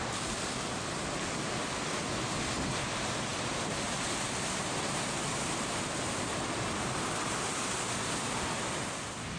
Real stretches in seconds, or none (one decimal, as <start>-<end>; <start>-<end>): 0.0-9.4